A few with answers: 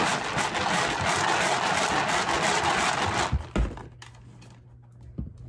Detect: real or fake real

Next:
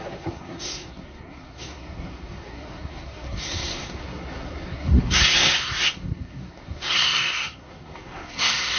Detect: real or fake fake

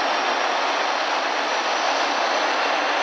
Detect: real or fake real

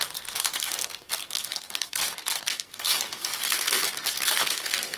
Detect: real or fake fake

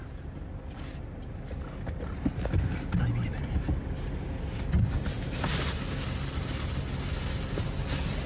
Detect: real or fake real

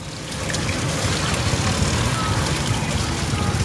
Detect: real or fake real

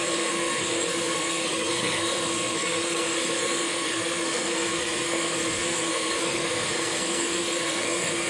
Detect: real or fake fake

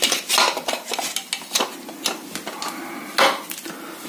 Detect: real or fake real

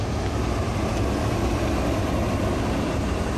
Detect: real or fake real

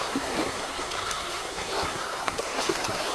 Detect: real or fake fake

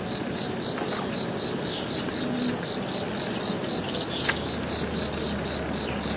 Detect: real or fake real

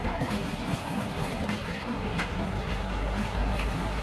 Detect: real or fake fake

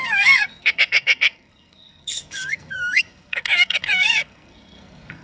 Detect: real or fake fake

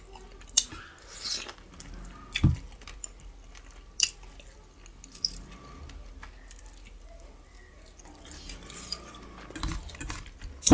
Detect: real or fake real